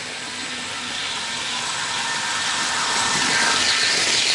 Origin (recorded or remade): recorded